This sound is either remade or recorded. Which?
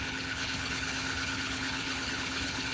remade